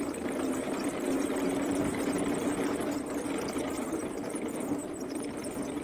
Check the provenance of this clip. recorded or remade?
remade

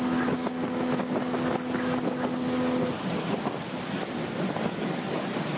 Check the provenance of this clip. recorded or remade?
recorded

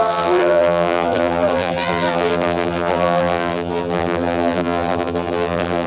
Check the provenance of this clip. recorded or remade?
remade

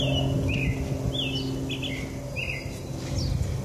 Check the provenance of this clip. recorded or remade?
recorded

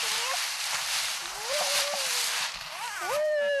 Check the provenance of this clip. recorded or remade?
remade